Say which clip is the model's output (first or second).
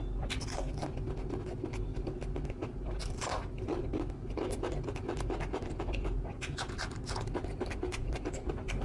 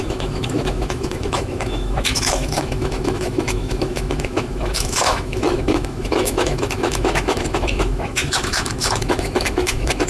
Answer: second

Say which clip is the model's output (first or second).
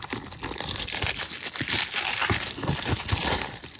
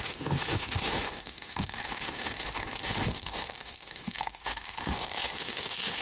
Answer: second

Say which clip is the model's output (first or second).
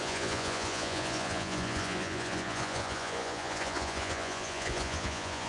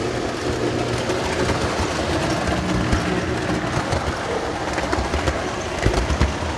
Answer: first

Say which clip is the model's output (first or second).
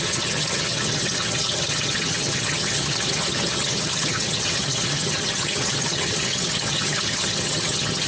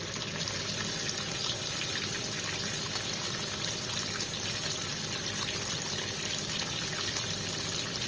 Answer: first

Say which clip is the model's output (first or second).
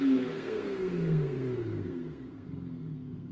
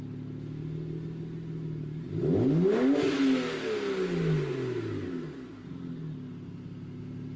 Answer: first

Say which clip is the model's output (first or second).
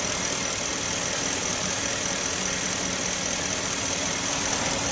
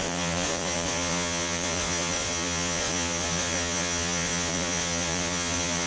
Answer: second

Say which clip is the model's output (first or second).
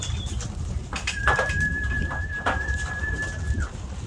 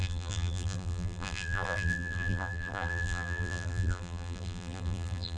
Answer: second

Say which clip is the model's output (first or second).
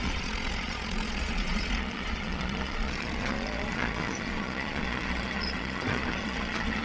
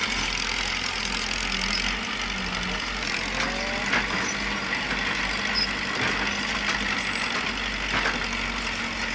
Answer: first